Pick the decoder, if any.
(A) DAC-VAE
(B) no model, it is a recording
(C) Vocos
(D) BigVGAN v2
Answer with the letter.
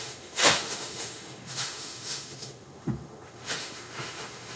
A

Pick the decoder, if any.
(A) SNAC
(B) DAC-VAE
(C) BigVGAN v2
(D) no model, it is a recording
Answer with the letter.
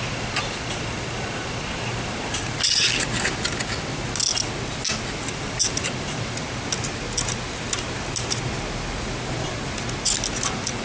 D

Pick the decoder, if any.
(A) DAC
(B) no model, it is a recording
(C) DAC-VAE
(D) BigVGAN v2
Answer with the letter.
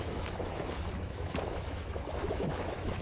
C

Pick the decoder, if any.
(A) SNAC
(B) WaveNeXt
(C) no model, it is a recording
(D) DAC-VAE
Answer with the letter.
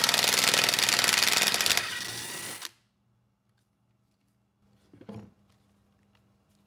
C